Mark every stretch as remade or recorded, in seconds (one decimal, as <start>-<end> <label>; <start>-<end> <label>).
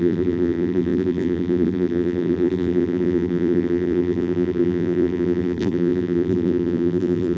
0.0-7.4 remade